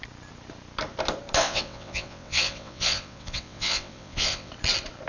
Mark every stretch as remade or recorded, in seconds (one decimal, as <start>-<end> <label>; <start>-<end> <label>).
0.0-1.4 recorded; 1.4-4.5 remade; 4.5-5.1 recorded